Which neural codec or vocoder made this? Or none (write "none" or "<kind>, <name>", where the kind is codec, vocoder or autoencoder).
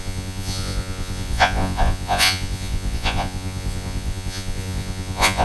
vocoder, Vocos